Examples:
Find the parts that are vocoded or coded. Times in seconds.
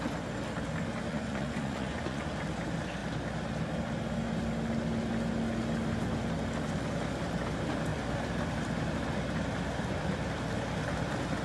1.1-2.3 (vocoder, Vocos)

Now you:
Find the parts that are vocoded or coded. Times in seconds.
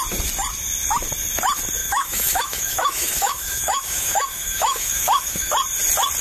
1.8-5.5 (autoencoder, DAC-VAE)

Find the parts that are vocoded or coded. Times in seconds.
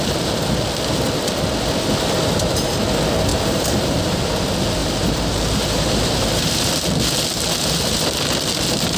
3.3-4.3 (vocoder, BigVGAN v2); 4.8-6.6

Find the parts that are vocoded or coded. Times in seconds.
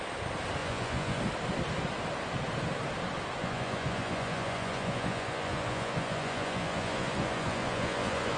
0.6-1.2 (vocoder, Vocos); 3.4-8.4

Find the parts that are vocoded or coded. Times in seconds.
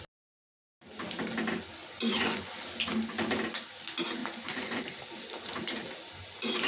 1.8-2.5 (vocoder, Vocos); 4.2-4.8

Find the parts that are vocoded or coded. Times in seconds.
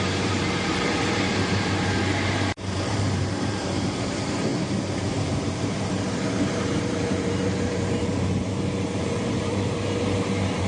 0.0-4.5 (vocoder, BigVGAN v2); 5.1-10.7